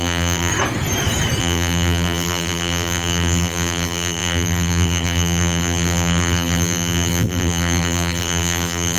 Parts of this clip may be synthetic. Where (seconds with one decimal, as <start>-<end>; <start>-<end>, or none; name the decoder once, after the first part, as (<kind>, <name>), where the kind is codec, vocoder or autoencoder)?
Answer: 0.0-0.5 (vocoder, BigVGAN v2); 1.4-9.0